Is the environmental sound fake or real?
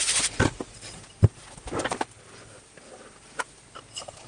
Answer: fake